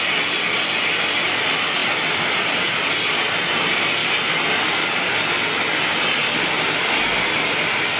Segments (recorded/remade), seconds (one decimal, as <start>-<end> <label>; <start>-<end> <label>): 0.0-1.8 recorded; 1.8-2.8 remade; 2.8-4.0 recorded; 4.0-5.1 remade; 5.1-6.2 recorded; 6.2-7.1 remade; 7.1-8.0 recorded